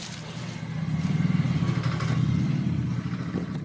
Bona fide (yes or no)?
yes